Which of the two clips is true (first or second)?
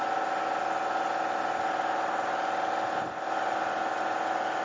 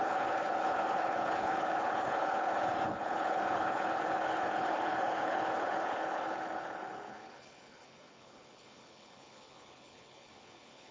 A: first